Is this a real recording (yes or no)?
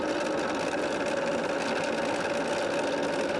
yes